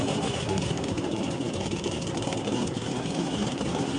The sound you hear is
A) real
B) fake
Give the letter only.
B